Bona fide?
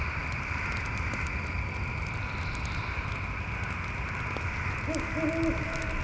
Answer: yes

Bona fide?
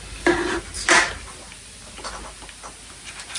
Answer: yes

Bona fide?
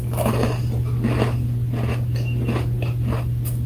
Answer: yes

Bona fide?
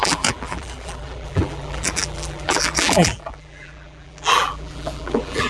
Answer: no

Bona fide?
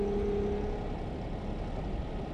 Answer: yes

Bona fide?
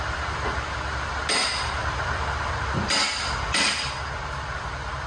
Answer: yes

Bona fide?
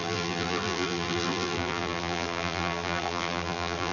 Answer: no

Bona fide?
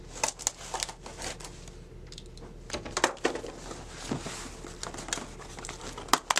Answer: yes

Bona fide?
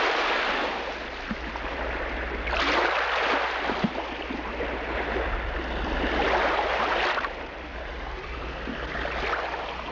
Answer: yes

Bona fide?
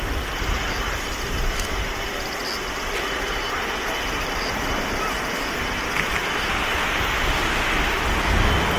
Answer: yes